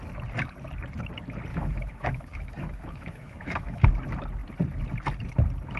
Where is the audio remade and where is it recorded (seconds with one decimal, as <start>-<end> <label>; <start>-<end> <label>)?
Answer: 0.0-1.5 recorded; 1.5-3.9 remade; 3.9-5.8 recorded